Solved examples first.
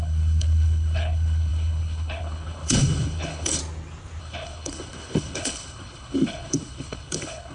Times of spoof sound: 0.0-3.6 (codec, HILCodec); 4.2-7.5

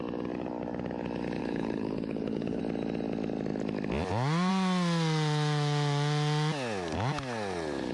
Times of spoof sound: 1.4-2.6 (codec, HILCodec)